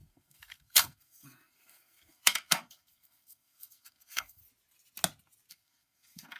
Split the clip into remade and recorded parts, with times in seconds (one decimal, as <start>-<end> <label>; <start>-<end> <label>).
0.0-4.4 remade; 4.4-5.5 recorded; 5.5-6.4 remade